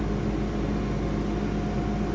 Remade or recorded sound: recorded